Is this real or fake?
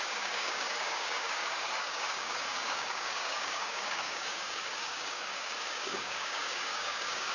fake